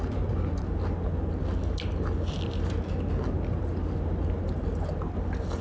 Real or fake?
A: real